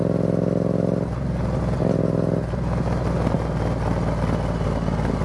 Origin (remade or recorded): recorded